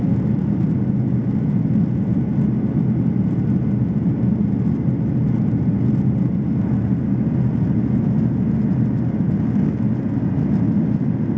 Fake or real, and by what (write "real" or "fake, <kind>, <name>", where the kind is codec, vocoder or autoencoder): real